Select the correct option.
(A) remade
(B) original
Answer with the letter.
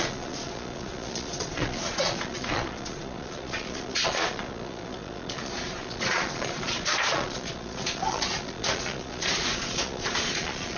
A